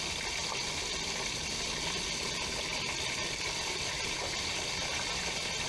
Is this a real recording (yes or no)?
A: yes